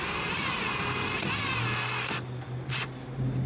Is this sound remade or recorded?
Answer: recorded